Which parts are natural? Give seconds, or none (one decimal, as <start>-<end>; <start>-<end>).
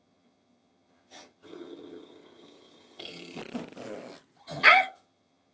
3.4-4.4